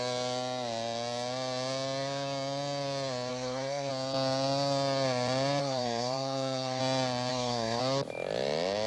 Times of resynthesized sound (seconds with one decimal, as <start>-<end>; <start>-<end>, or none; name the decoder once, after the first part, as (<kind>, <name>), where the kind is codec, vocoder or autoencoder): 3.3-3.9 (codec, SNAC); 5.6-6.8; 7.3-7.8